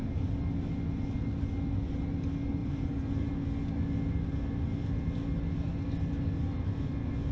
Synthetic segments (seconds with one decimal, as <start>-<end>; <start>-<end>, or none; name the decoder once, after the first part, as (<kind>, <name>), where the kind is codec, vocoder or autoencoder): 2.6-3.3 (vocoder, BigVGAN v2)